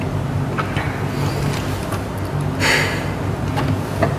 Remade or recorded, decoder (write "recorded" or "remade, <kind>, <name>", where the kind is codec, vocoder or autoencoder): recorded